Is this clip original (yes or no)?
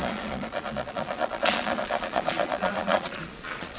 no